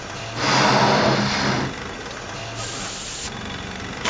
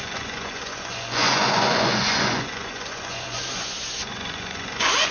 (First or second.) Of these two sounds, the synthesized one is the second